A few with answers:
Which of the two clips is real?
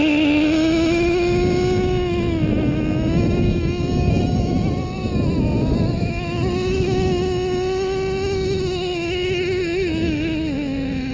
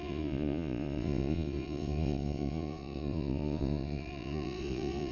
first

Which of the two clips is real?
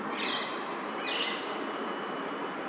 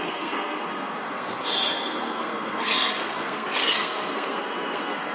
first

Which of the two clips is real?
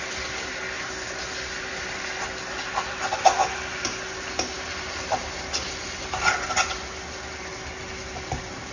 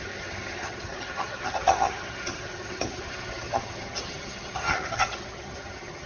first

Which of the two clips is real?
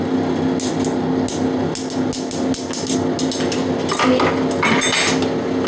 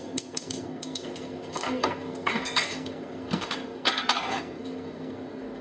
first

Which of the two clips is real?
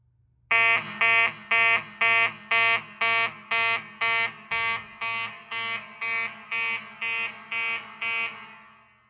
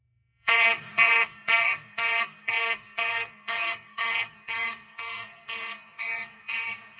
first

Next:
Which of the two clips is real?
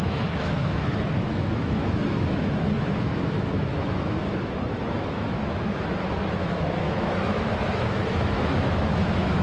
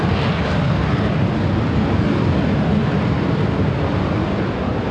second